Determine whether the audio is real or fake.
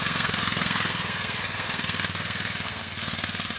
fake